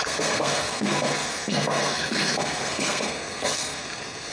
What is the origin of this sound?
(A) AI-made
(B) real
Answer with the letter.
A